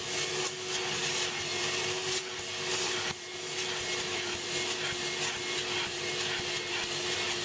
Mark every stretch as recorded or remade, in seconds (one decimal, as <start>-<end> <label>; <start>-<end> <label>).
0.0-7.4 recorded